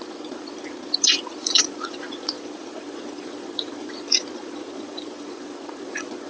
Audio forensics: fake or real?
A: fake